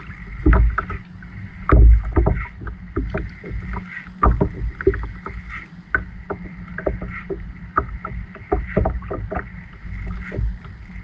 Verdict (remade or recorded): recorded